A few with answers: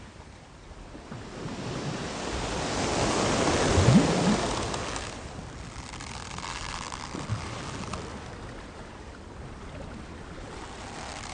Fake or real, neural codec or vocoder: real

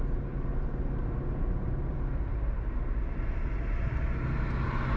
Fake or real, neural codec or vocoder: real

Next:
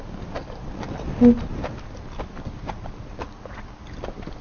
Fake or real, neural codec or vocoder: real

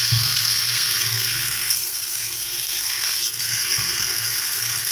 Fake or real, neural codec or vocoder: fake, codec, SNAC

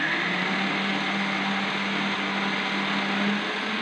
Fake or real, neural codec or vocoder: real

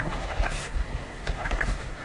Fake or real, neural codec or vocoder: fake, codec, SNAC